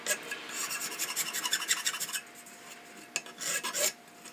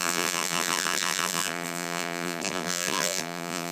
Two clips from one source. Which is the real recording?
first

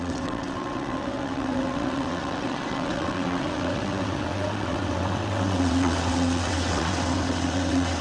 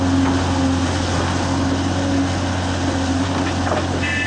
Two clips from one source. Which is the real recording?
second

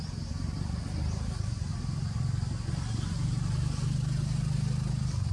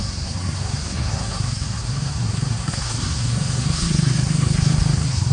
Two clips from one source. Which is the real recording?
first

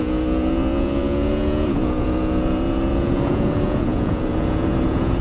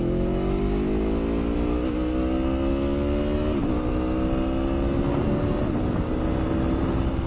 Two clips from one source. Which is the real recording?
second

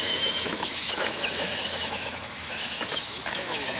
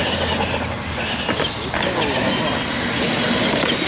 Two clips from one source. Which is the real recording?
second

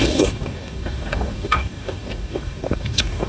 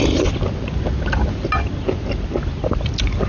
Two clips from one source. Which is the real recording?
second